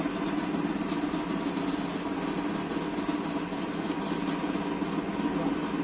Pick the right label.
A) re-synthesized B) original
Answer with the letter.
B